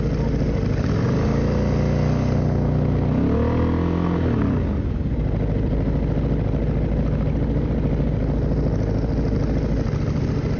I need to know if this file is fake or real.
real